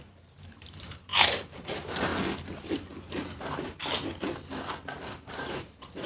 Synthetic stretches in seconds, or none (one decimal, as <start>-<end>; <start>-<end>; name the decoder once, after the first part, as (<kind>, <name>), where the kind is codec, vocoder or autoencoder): 0.0-2.1 (vocoder, BigVGAN v2); 5.1-6.1